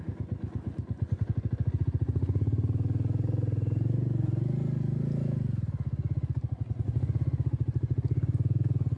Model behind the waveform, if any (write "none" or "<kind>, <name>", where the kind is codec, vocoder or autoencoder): none